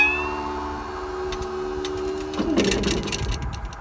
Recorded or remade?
recorded